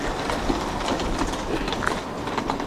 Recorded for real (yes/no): yes